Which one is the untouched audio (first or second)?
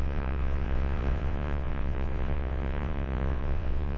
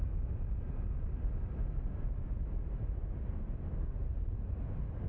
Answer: second